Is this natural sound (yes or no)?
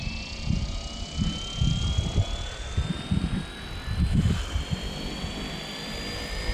no